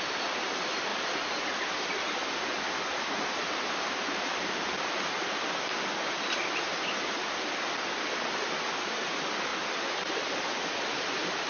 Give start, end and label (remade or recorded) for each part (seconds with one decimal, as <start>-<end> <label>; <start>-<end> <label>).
0.0-11.5 recorded